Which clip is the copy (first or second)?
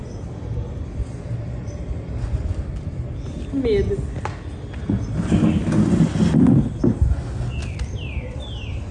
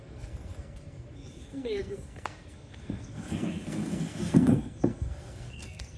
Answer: second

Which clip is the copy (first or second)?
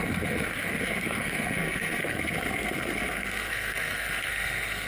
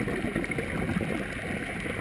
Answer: first